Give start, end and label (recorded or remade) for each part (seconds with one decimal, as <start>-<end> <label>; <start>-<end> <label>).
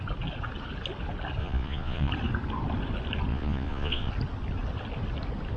0.0-1.4 recorded; 1.4-2.1 remade; 2.1-3.3 recorded; 3.3-4.1 remade; 4.1-5.6 recorded